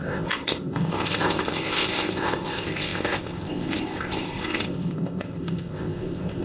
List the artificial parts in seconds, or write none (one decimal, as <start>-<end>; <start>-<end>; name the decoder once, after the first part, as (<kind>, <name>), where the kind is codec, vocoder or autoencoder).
0.0-6.4 (codec, ZipCodec)